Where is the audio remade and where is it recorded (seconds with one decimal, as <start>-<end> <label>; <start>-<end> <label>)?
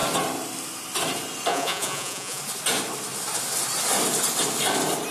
0.0-1.5 recorded; 1.5-2.4 remade; 2.4-5.1 recorded